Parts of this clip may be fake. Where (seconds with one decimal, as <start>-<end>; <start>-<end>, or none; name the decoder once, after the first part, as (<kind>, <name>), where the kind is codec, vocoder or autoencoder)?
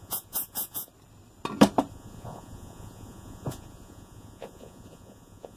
0.0-0.9 (vocoder, Vocos); 1.9-5.6